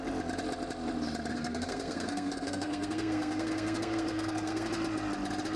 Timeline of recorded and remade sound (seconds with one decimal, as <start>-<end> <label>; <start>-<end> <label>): 0.0-1.3 recorded; 1.3-4.7 remade; 4.7-5.6 recorded

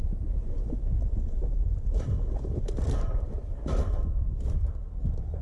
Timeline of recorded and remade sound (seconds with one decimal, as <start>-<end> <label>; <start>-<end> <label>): 0.0-1.5 recorded; 1.5-4.7 remade; 4.7-5.4 recorded

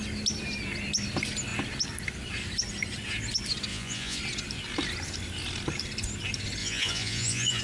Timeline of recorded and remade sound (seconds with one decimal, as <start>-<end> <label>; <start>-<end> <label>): 0.0-3.7 recorded; 3.7-4.2 remade; 4.2-6.6 recorded; 6.6-7.6 remade